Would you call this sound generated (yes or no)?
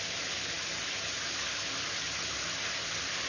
no